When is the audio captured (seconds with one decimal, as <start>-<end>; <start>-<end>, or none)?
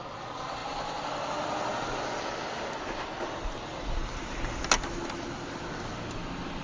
0.0-6.6